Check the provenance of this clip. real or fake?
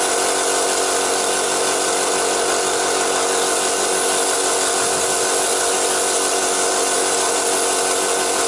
real